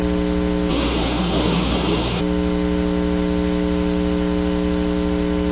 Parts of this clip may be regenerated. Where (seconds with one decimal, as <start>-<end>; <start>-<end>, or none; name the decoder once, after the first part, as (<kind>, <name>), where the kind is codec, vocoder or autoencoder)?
0.7-2.2 (codec, SNAC)